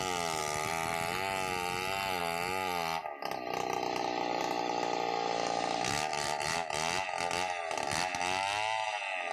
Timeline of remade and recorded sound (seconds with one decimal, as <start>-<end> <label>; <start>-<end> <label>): 0.0-6.1 recorded; 6.1-6.7 remade; 6.7-9.3 recorded